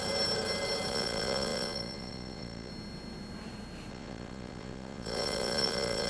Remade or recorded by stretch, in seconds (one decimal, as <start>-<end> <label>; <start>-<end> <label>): 0.0-0.9 recorded; 0.9-2.7 remade; 2.7-3.9 recorded; 3.9-6.1 remade